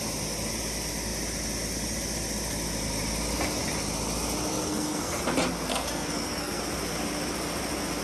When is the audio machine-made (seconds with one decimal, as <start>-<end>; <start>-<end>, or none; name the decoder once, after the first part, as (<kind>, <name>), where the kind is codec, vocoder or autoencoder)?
4.5-5.2 (codec, SNAC); 5.7-6.6

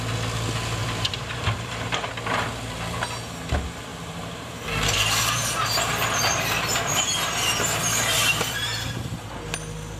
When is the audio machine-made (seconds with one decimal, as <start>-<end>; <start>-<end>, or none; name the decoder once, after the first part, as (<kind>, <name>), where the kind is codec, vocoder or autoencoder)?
0.8-2.1 (vocoder, BigVGAN v2); 3.9-6.8; 8.2-9.3